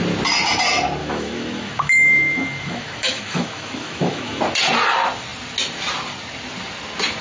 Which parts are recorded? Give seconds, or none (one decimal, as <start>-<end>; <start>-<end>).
0.0-1.0; 4.4-7.2